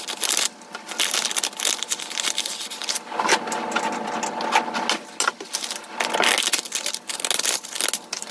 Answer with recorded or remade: recorded